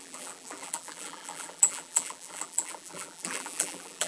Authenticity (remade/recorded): remade